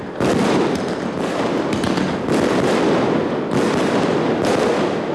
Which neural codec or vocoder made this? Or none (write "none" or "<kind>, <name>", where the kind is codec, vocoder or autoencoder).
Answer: none